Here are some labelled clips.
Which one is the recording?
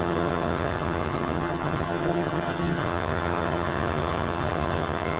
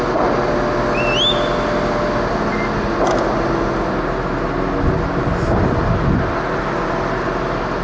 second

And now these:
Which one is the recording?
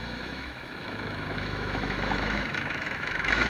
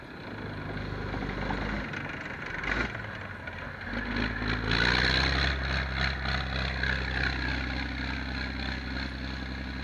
second